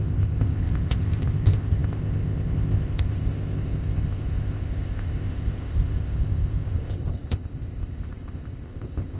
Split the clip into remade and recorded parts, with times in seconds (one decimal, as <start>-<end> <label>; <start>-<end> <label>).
0.0-9.2 remade